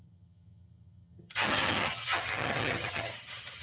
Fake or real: fake